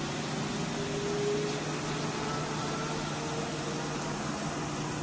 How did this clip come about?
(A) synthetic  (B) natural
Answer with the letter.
B